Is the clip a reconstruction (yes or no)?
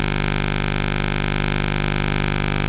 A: no